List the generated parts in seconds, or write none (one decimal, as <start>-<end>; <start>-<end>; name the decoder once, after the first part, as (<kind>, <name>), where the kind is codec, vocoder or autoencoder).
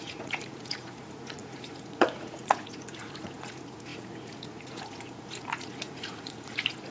0.0-6.9 (vocoder, Vocos)